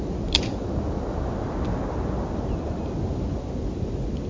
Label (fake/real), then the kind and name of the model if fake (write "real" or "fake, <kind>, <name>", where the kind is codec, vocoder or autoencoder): real